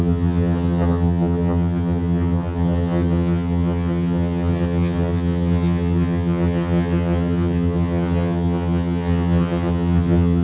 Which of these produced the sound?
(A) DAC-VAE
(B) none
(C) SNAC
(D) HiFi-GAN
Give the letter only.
D